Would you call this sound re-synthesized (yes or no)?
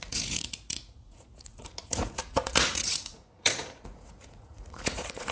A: yes